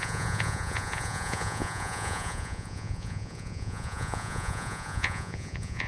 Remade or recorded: remade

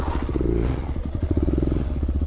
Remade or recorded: remade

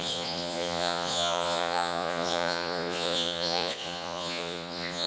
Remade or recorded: remade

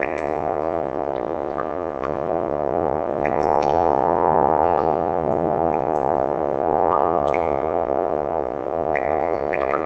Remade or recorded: remade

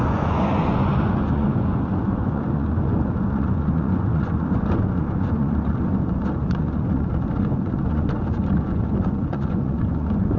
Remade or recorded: remade